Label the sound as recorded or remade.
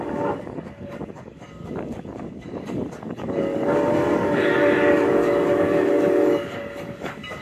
remade